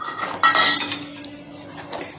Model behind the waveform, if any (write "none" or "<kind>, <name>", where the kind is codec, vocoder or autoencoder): none